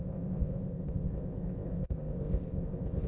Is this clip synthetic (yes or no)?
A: yes